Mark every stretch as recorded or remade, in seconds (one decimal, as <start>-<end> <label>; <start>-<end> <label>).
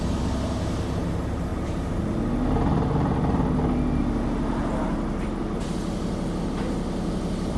0.0-7.6 recorded